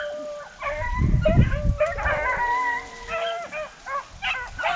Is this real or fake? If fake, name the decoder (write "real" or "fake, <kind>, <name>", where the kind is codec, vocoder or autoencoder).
real